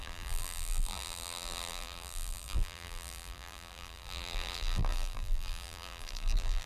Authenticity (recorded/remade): remade